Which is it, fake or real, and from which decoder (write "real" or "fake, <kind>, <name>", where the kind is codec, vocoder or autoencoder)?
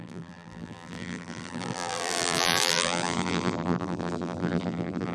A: fake, vocoder, BigVGAN v2